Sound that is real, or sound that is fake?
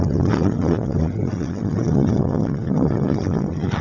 fake